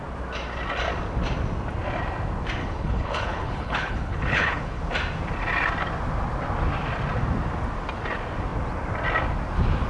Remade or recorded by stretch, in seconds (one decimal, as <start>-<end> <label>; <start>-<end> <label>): 0.0-2.6 recorded; 2.6-4.8 remade; 4.8-9.9 recorded